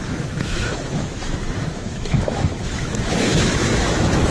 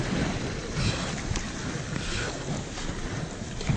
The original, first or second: second